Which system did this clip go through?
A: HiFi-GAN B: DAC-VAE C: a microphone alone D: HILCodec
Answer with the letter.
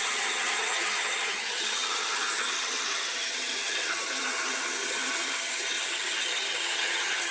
A